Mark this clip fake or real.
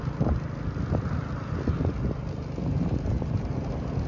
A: real